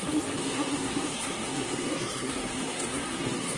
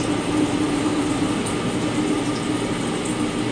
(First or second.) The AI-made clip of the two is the first